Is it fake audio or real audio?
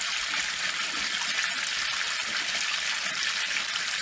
real